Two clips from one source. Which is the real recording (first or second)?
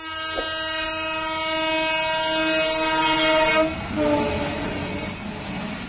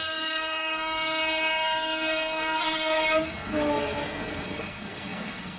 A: first